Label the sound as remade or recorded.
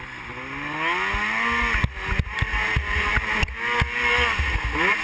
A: recorded